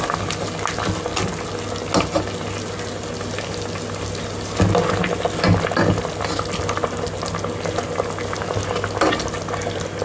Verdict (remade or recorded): recorded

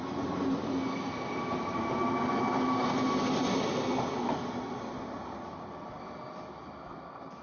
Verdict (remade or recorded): recorded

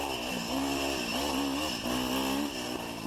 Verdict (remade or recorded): recorded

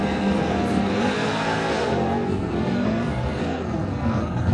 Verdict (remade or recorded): remade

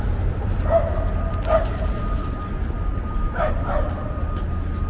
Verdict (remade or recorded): recorded